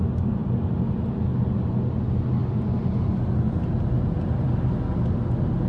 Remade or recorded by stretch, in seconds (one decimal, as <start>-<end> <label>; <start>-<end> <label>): 0.0-5.7 recorded